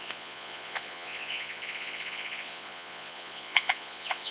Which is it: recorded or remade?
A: remade